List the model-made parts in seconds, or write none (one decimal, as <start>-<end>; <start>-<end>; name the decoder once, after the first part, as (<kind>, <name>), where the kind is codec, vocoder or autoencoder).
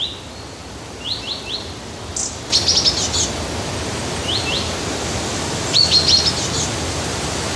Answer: none